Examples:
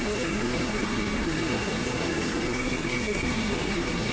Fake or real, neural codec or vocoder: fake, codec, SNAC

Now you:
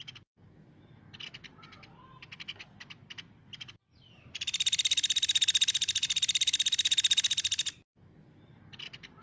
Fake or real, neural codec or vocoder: real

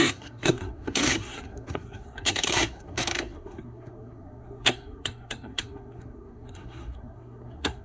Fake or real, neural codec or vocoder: fake, codec, SNAC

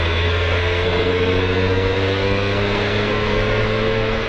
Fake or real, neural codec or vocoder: fake, codec, SNAC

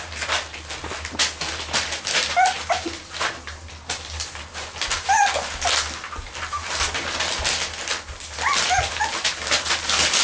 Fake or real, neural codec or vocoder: real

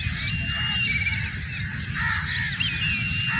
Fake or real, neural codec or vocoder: real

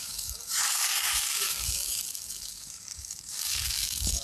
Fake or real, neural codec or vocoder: fake, codec, DAC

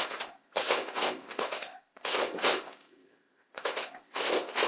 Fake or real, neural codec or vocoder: fake, codec, ZipCodec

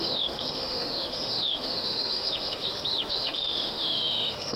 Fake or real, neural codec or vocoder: fake, autoencoder, DAC-VAE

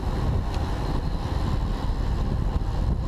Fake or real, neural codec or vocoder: real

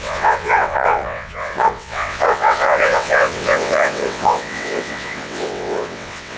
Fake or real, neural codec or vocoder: fake, vocoder, WaveNeXt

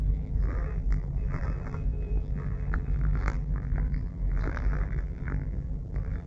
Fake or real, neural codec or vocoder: fake, vocoder, BigVGAN v2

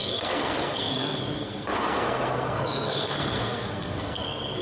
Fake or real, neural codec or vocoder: fake, codec, SNAC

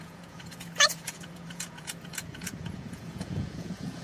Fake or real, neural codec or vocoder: fake, vocoder, Vocos